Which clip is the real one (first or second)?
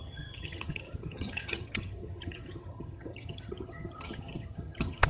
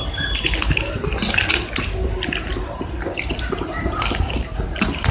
second